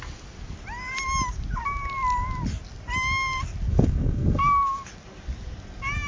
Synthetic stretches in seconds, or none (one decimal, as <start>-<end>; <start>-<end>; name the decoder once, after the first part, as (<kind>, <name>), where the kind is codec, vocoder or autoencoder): 3.7-4.4 (codec, SNAC)